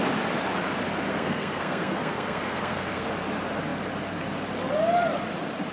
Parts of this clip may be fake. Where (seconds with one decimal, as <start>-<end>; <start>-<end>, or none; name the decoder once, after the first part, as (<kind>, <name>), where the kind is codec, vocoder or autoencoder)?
1.1-3.1 (codec, SNAC)